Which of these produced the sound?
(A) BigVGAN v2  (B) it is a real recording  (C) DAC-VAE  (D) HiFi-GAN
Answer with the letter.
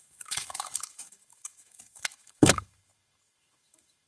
C